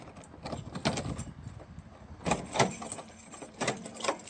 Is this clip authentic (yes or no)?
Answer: yes